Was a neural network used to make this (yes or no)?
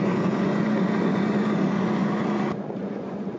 yes